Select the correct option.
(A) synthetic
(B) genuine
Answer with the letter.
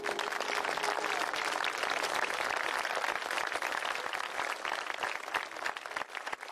B